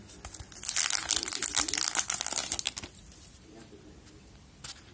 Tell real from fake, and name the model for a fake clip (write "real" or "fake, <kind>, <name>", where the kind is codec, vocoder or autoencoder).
real